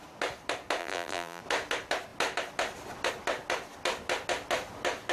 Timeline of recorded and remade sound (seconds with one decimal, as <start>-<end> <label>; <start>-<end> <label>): 0.0-0.8 recorded; 0.8-1.4 remade; 1.4-5.1 recorded